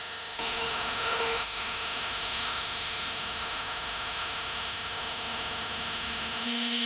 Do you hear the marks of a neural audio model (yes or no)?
yes